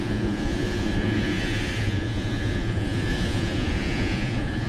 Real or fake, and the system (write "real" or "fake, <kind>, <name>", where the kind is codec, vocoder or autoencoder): fake, vocoder, Vocos